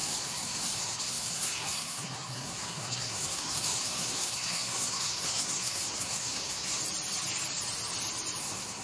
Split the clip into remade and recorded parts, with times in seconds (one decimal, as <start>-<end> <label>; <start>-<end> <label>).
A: 0.0-6.8 remade; 6.8-8.4 recorded; 8.4-8.8 remade